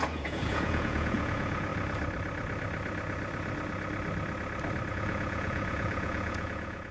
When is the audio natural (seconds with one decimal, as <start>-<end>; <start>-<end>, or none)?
1.7-4.9